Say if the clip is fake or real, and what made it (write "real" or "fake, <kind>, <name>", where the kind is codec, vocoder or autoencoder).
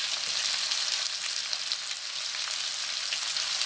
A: real